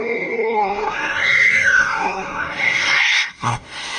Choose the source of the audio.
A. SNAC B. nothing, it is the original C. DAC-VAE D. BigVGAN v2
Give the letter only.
A